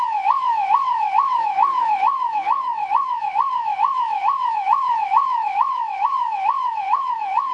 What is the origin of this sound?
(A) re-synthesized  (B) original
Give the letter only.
A